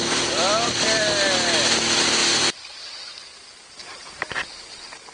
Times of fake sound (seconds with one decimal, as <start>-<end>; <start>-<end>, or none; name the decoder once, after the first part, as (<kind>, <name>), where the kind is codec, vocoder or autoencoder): 0.0-1.0 (vocoder, BigVGAN v2); 2.2-3.1